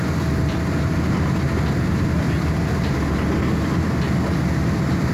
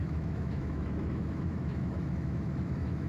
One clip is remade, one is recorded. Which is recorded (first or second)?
first